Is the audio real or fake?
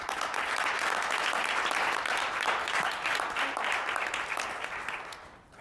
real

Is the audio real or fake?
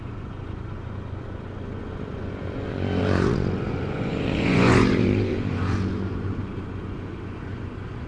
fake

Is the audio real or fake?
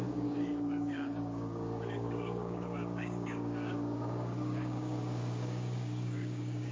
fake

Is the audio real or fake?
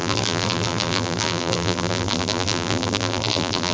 fake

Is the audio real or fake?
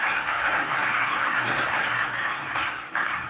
fake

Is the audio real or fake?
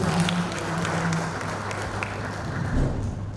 real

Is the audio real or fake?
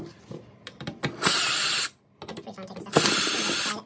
real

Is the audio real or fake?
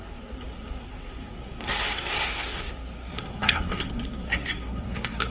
fake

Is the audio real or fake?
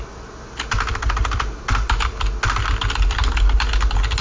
real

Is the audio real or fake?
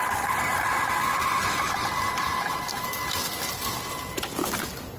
real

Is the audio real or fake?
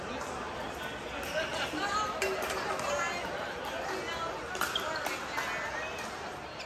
real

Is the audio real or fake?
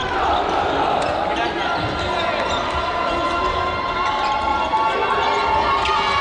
real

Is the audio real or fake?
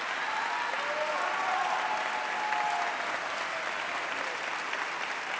real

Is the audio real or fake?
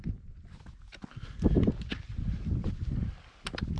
real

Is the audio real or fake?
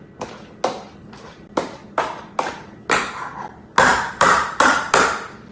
real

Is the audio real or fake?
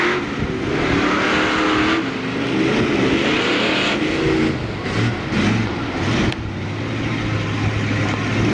real